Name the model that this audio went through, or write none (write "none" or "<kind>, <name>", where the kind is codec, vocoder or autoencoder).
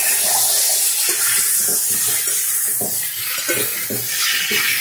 none